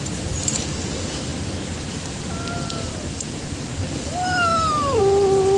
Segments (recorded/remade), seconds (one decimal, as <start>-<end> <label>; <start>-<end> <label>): 0.0-2.9 recorded; 2.9-3.9 remade; 3.9-5.6 recorded